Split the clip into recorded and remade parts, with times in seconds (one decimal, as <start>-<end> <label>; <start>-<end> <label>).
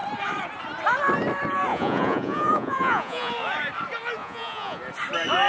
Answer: 0.0-1.7 recorded; 1.7-3.3 remade; 3.3-4.2 recorded; 4.2-4.8 remade; 4.8-5.5 recorded